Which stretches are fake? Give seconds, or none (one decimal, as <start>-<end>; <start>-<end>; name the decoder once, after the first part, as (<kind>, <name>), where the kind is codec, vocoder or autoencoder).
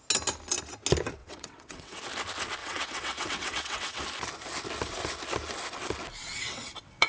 1.2-2.0 (vocoder, WaveNeXt); 2.6-4.0; 6.2-7.1